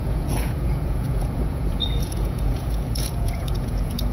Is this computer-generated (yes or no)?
yes